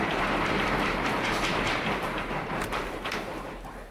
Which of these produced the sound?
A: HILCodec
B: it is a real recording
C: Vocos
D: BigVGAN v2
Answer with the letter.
D